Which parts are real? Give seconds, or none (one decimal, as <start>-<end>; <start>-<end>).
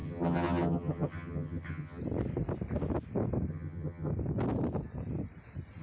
2.0-3.5; 4.1-5.8